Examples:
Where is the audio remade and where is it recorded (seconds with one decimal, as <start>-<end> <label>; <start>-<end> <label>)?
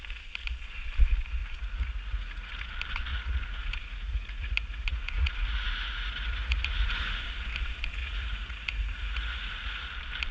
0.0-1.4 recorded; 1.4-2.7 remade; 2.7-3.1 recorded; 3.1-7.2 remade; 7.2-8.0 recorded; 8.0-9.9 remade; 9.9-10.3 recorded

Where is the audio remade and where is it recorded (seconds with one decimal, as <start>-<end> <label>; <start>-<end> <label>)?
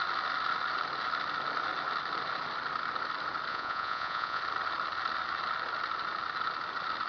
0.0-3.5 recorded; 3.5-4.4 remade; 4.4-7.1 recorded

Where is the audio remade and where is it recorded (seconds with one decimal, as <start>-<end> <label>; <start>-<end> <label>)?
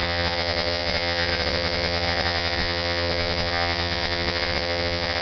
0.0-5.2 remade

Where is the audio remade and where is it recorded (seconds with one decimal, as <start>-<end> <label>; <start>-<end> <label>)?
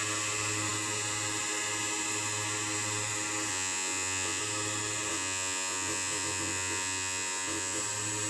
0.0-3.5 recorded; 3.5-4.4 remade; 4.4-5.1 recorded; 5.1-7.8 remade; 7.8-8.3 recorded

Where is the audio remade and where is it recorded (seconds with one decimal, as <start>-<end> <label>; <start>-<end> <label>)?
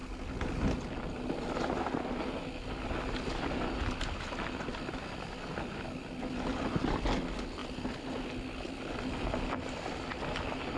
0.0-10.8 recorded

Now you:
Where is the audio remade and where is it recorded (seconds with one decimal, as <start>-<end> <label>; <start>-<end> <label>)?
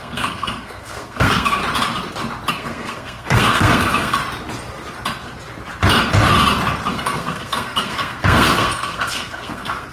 0.0-1.6 remade; 1.6-2.5 recorded; 2.5-4.2 remade; 4.2-6.9 recorded; 6.9-9.9 remade